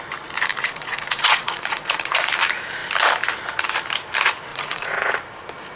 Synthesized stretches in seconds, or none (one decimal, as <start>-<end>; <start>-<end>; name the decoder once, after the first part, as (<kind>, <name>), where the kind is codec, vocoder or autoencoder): 0.5-2.3 (vocoder, Vocos); 4.5-5.1